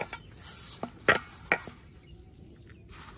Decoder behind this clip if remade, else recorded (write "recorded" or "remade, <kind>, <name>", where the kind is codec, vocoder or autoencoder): recorded